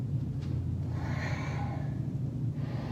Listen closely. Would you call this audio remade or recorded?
recorded